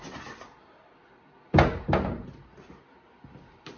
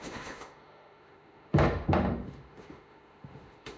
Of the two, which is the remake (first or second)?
second